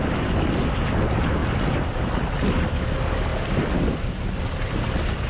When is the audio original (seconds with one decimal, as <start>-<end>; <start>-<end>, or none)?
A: 0.0-5.3

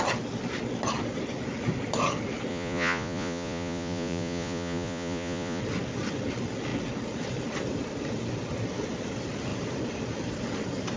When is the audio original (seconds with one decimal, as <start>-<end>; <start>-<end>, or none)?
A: 0.0-2.5; 5.6-11.0

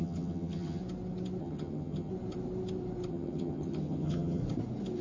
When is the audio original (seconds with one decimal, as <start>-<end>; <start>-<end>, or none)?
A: 0.8-1.4; 2.1-3.1; 4.4-5.0